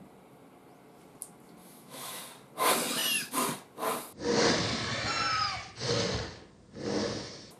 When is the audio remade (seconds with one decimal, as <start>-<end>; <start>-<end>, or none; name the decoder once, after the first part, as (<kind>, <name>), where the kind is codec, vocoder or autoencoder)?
1.6-2.2 (autoencoder, DAC-VAE)